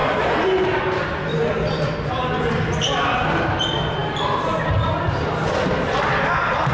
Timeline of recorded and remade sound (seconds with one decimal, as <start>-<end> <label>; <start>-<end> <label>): 0.0-0.8 remade; 0.8-1.3 recorded; 1.3-2.2 remade; 2.2-6.7 recorded